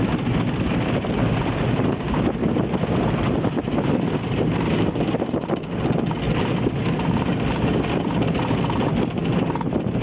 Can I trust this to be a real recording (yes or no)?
yes